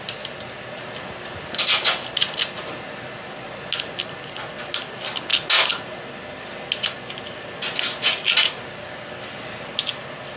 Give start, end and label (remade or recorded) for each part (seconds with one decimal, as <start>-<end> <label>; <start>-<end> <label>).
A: 0.0-10.4 recorded